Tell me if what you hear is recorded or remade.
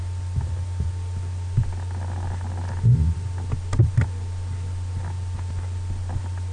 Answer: recorded